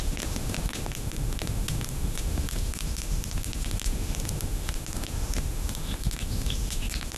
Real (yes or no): no